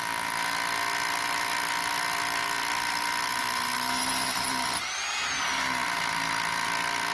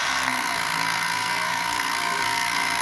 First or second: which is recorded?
first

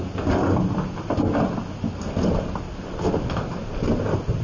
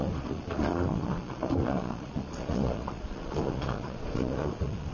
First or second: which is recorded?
first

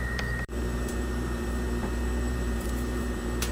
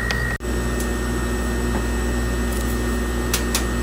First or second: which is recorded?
second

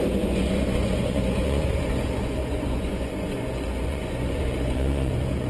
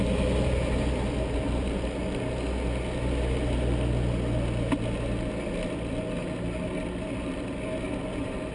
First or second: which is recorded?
second